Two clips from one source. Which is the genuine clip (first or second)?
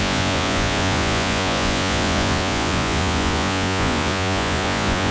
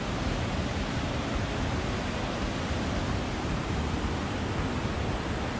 second